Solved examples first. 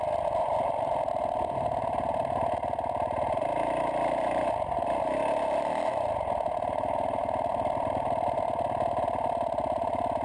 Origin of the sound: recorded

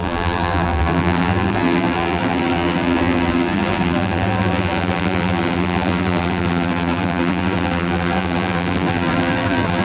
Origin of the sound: remade